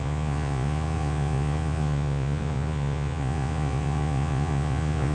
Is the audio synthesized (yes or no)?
yes